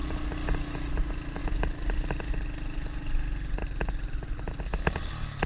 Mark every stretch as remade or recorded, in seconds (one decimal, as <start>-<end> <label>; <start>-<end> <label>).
0.0-5.5 recorded